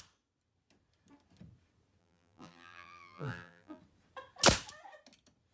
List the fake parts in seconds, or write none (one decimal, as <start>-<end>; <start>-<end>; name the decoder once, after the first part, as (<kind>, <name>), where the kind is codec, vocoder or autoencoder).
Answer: 2.0-3.8 (vocoder, BigVGAN v2)